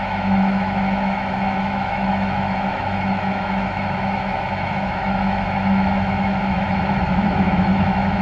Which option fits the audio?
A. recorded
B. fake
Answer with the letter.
B